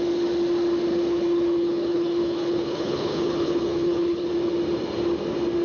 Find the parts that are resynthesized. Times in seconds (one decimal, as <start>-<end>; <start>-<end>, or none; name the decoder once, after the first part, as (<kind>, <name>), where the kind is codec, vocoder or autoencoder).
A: 0.9-4.3 (codec, HILCodec)